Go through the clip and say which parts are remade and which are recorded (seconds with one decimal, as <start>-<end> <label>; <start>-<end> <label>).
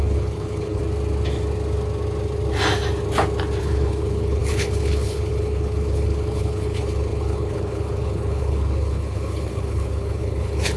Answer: 0.0-0.8 remade; 0.8-3.6 recorded; 3.6-10.8 remade